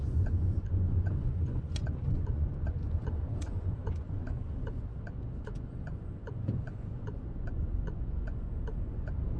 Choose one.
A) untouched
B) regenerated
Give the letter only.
B